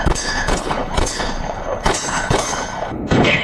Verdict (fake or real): fake